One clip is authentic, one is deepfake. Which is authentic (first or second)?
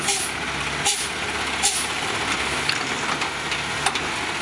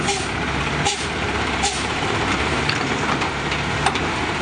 first